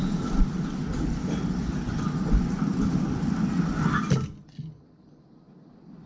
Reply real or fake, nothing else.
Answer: real